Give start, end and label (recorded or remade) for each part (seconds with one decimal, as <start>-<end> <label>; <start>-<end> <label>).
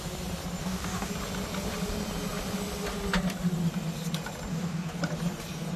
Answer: 0.0-0.6 recorded; 0.6-1.1 remade; 1.1-4.5 recorded; 4.5-5.0 remade; 5.0-5.8 recorded